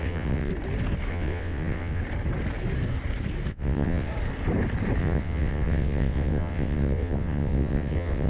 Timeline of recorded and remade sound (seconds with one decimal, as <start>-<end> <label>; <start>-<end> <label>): 0.0-0.5 remade; 0.5-1.1 recorded; 1.1-2.0 remade; 2.0-3.5 recorded; 3.5-4.1 remade; 4.1-5.0 recorded; 5.0-8.3 remade